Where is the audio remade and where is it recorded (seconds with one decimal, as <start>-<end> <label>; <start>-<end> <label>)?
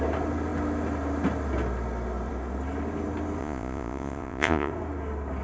0.0-3.4 recorded; 3.4-4.7 remade; 4.7-5.4 recorded